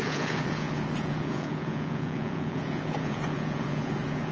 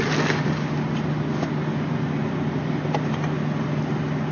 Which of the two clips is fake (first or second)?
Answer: first